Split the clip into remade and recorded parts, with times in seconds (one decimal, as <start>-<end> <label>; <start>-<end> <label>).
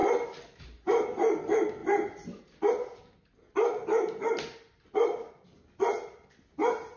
0.0-7.0 recorded